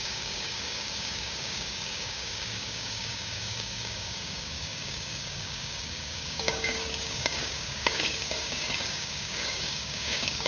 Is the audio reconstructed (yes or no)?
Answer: yes